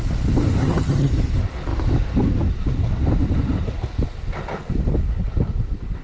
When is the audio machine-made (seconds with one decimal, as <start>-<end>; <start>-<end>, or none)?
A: 0.6-1.1